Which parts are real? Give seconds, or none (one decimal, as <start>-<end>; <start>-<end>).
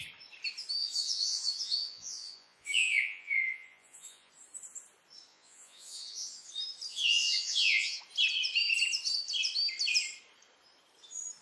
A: 0.0-0.8; 4.3-5.3; 6.5-6.9; 8.0-11.4